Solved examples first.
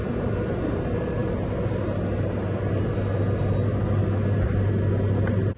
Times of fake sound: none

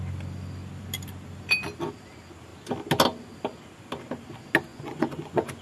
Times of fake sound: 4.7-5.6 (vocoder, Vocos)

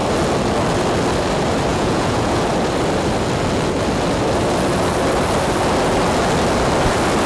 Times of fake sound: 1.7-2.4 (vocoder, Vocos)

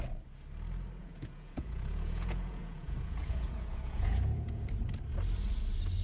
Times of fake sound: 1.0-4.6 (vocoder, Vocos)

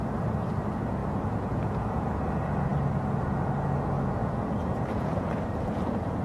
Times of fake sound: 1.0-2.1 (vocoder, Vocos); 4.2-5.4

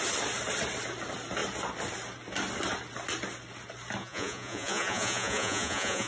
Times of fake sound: 4.0-6.1 (vocoder, Vocos)

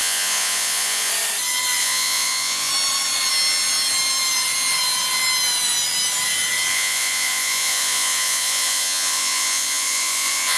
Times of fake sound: 0.0-1.1 (vocoder, Vocos); 1.8-2.7; 6.7-10.6